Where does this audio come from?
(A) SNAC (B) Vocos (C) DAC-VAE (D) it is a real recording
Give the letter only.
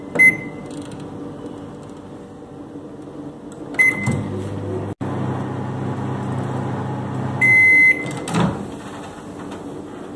D